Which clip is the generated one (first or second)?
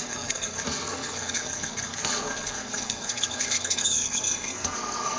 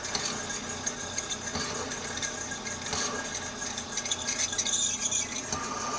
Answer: first